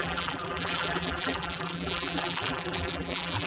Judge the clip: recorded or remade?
remade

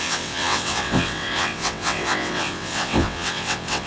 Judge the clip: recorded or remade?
remade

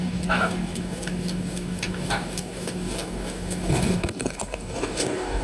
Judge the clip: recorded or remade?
remade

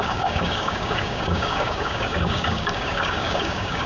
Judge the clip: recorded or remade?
remade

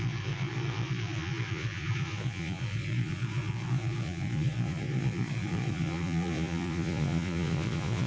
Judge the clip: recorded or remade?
remade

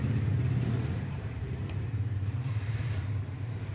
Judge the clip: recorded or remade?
remade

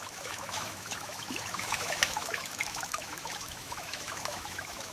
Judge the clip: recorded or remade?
remade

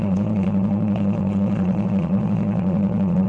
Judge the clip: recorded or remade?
remade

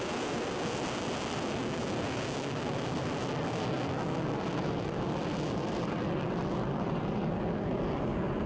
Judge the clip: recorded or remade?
recorded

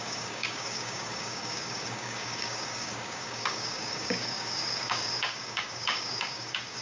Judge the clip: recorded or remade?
remade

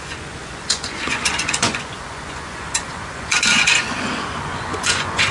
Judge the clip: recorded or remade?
remade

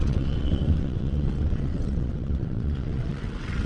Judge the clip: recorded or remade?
remade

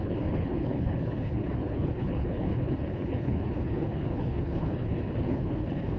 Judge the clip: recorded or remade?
remade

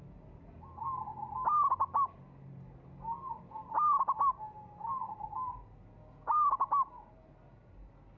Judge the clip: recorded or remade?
recorded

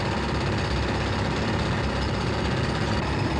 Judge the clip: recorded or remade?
recorded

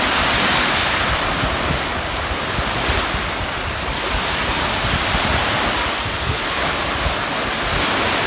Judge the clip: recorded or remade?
recorded